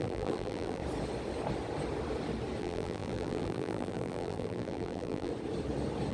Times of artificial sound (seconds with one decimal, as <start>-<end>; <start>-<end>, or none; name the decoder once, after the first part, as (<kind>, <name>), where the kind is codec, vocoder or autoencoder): 0.0-0.8 (vocoder, BigVGAN v2); 2.6-5.3